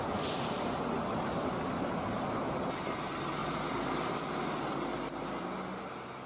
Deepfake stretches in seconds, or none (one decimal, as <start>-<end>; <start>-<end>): 3.4-3.9